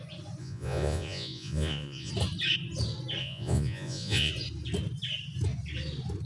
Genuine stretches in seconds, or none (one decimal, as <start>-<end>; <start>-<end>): 0.0-0.4; 2.1-3.2; 4.3-6.3